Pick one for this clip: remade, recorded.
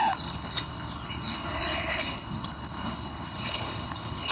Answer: remade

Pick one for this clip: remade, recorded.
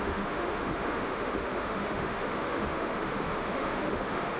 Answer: remade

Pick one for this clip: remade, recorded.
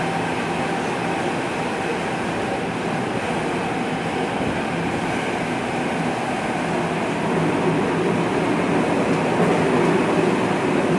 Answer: recorded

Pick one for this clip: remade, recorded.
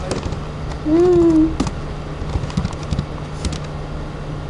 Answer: recorded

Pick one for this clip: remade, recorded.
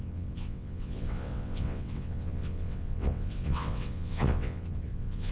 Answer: remade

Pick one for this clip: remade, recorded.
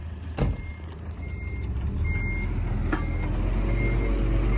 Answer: recorded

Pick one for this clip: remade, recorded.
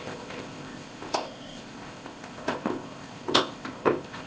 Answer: remade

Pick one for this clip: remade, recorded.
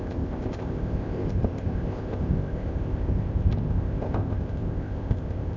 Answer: remade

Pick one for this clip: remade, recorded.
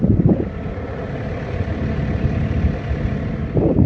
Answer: recorded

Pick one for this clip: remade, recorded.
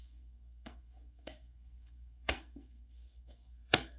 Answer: remade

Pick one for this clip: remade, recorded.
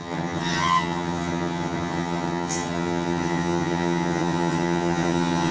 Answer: remade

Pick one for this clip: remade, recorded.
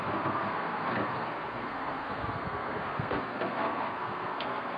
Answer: remade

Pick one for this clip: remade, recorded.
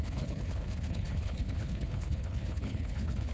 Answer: remade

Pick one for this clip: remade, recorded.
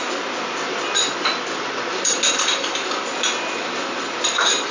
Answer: recorded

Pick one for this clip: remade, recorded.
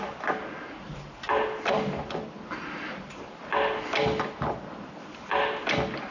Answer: recorded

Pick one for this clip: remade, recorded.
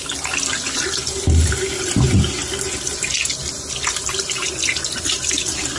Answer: recorded